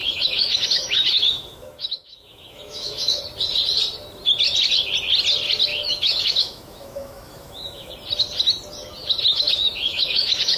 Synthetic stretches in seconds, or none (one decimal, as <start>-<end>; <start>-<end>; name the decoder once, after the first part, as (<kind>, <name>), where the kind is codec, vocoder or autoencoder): 0.0-3.2 (autoencoder, DAC-VAE); 5.7-7.9; 9.3-10.6